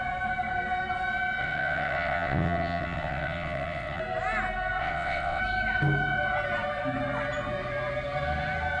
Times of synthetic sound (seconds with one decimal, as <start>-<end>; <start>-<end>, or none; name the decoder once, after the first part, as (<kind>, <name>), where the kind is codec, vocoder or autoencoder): 1.4-4.0 (vocoder, WaveNeXt); 4.8-5.4